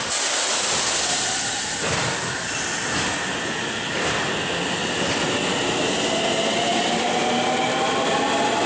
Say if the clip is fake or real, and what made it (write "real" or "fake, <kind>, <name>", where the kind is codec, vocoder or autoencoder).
real